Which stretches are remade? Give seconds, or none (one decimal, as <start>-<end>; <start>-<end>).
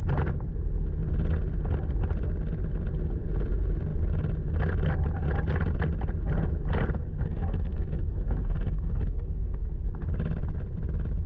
7.0-9.7